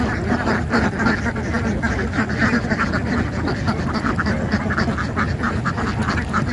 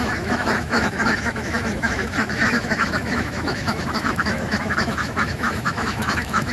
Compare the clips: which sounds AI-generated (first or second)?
second